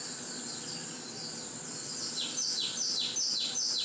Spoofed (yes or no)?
no